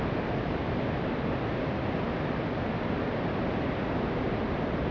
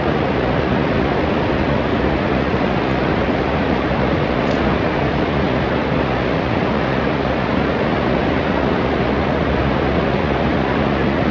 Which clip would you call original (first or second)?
first